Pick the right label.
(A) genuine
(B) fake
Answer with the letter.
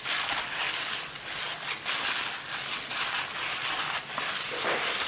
A